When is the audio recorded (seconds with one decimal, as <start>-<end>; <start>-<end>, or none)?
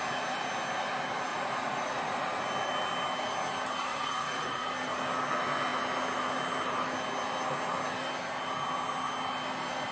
0.0-1.3; 2.2-3.9; 4.7-9.9